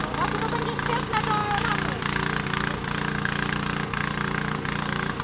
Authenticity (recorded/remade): recorded